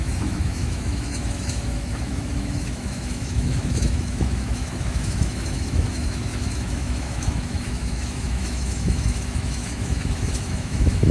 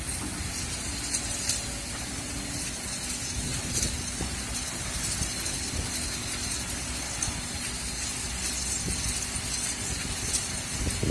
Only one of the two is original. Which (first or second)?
second